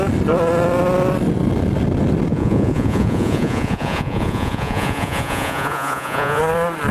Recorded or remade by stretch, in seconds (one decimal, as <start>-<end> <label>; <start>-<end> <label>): 0.0-2.3 recorded; 2.3-6.4 remade; 6.4-6.9 recorded